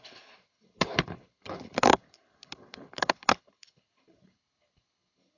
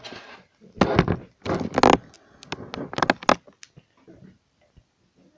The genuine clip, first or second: second